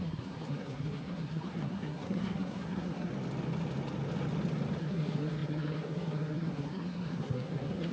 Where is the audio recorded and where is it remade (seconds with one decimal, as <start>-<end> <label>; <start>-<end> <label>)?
0.0-3.1 remade; 3.1-4.8 recorded; 4.8-7.9 remade